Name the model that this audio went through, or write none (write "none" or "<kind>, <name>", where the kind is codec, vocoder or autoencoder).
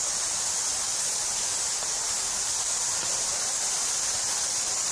vocoder, BigVGAN v2